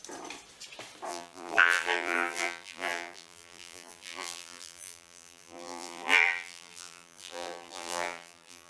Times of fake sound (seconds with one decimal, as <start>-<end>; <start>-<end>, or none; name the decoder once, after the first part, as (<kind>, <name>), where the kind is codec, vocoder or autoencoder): 1.1-8.7 (vocoder, BigVGAN v2)